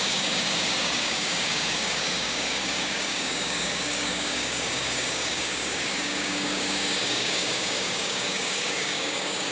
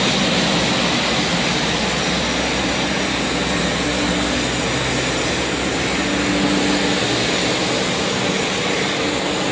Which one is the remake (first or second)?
first